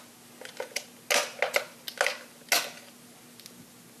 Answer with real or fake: real